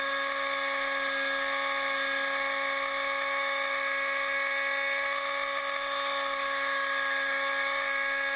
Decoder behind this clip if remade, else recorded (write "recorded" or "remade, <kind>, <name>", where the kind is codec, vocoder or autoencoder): recorded